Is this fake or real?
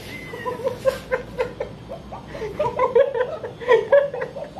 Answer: real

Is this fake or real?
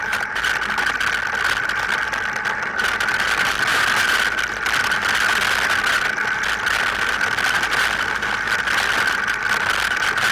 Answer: real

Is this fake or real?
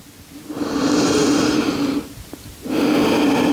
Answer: real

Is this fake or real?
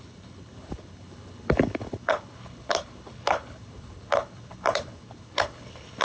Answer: fake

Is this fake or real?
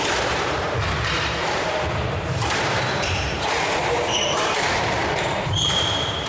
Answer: fake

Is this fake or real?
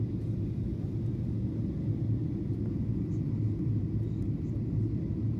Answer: real